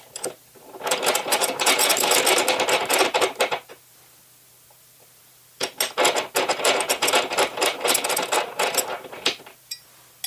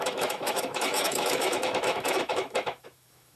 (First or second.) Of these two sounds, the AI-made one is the second